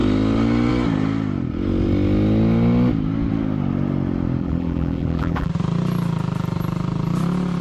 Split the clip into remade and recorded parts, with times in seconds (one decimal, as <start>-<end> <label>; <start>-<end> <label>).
0.0-4.4 recorded; 4.4-5.5 remade; 5.5-7.6 recorded